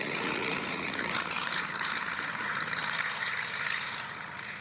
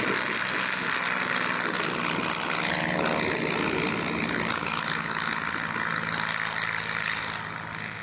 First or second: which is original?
second